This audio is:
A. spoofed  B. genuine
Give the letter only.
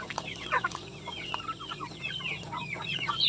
A